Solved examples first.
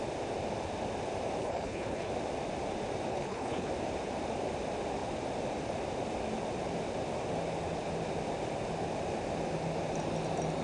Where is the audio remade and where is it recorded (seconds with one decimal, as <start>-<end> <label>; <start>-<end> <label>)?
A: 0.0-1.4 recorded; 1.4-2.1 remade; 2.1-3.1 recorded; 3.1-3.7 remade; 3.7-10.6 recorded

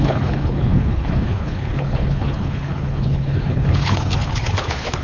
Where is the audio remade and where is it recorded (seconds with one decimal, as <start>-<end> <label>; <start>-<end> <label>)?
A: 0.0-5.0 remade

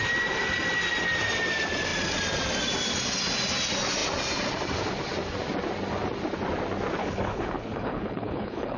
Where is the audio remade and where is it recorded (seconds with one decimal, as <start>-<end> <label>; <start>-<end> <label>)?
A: 0.0-7.0 recorded; 7.0-8.8 remade